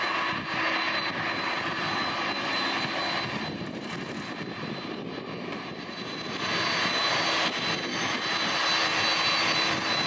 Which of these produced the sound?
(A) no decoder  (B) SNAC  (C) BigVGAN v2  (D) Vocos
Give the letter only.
A